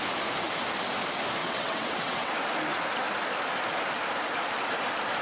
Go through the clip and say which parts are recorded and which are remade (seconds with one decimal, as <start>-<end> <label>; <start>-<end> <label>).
0.0-1.4 recorded; 1.4-2.3 remade; 2.3-5.2 recorded